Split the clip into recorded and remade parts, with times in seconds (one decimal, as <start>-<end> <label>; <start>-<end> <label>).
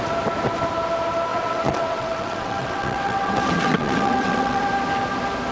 0.0-1.3 recorded; 1.3-4.6 remade; 4.6-5.5 recorded